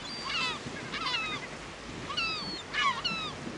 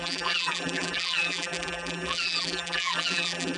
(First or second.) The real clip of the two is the first